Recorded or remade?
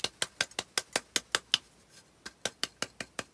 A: recorded